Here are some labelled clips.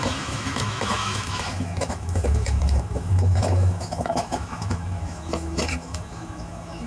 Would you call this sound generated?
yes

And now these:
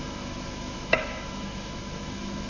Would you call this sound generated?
yes